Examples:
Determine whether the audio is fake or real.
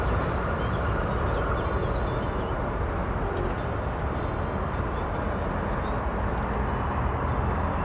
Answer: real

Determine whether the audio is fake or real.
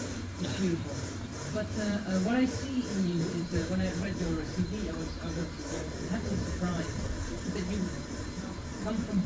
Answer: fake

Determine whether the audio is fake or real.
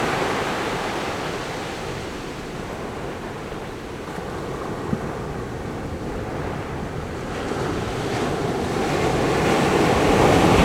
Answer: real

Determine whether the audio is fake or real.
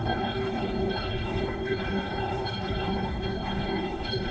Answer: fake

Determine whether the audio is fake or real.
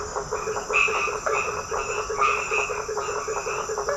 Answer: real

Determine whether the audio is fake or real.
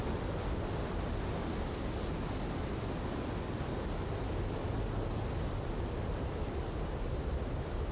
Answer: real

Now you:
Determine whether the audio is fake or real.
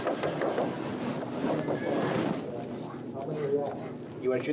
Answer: real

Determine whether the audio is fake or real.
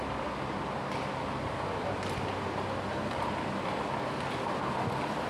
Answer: real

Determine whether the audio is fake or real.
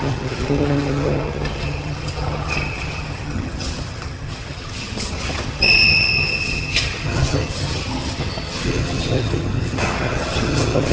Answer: fake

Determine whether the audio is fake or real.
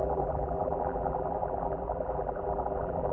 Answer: fake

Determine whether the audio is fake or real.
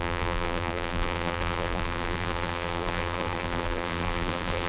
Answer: fake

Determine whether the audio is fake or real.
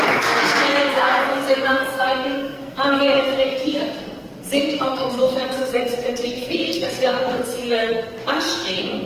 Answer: fake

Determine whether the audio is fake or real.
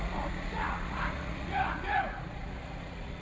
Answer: fake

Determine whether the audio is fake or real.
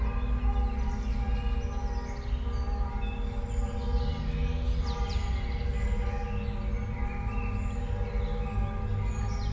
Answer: real